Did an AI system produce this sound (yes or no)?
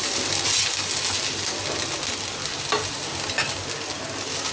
no